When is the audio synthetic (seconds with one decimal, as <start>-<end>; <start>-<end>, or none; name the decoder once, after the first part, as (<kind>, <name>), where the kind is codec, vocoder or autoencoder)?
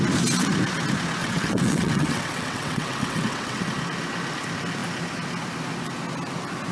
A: 1.2-3.6 (vocoder, WaveNeXt)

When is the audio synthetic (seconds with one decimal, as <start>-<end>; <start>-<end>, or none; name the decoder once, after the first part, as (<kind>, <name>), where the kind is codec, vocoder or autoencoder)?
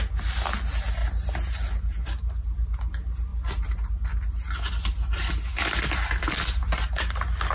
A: none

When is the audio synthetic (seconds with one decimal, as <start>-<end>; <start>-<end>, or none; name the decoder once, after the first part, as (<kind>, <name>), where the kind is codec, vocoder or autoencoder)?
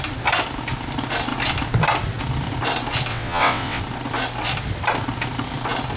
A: 3.1-3.8 (vocoder, WaveNeXt)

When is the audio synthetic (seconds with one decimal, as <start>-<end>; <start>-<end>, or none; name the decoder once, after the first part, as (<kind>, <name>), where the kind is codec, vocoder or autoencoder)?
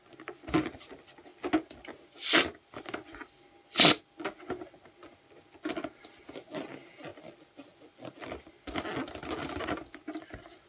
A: none